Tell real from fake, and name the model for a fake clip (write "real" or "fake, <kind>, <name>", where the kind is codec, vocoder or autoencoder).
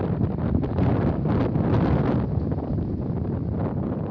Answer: real